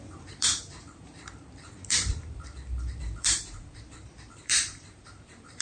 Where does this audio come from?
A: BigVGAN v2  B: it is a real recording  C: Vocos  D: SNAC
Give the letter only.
A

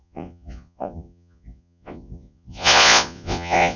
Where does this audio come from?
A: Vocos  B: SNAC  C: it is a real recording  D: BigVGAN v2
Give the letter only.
A